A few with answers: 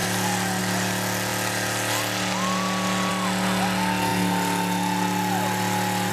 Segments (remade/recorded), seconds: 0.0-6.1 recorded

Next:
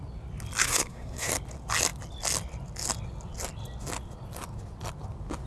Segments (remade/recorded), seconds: 0.0-0.6 recorded; 0.6-1.3 remade; 1.3-5.5 recorded